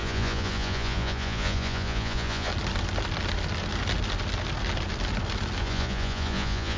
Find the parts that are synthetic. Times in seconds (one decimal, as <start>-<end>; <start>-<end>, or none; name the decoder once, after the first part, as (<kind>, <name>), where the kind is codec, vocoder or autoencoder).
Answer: 0.0-2.5 (vocoder, Vocos); 5.6-6.8